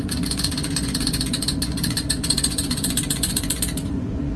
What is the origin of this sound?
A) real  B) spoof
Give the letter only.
B